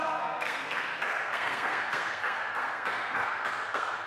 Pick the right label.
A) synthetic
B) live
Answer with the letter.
A